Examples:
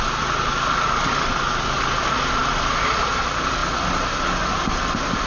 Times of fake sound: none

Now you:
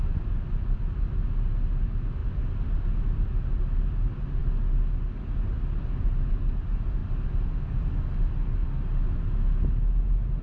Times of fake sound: none

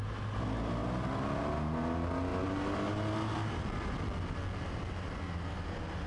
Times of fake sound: none

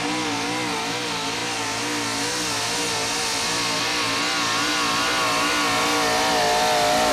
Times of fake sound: none

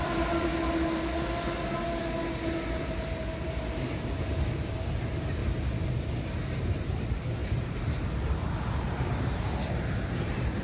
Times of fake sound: 0.0-0.5 (vocoder, BigVGAN v2); 2.7-5.4; 6.2-10.6

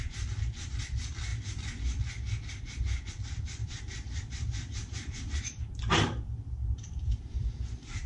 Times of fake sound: 3.6-5.4 (vocoder, BigVGAN v2); 6.6-7.5